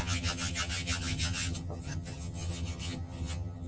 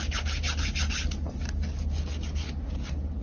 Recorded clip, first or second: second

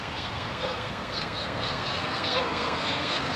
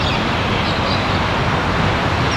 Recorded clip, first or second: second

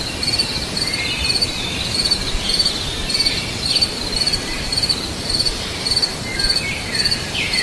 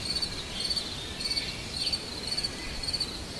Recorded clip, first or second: second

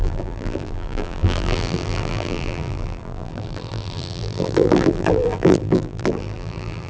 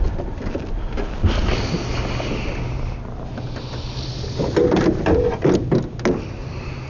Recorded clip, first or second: second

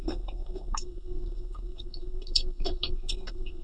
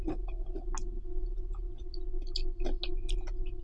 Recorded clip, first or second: second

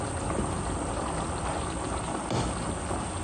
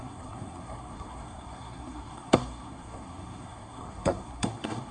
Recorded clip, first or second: first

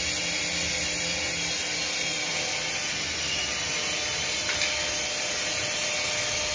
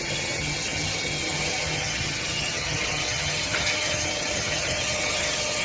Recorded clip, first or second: first